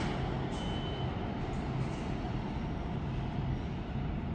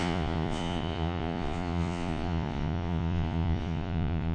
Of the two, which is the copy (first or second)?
second